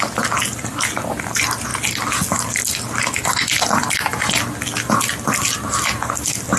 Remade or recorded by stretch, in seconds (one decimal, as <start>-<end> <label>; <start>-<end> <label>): 0.0-6.6 recorded